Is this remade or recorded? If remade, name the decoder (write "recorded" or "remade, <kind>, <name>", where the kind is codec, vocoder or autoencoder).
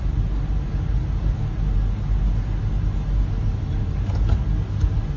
recorded